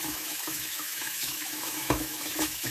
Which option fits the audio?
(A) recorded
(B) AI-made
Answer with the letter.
B